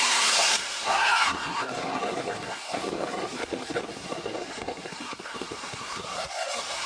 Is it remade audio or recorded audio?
remade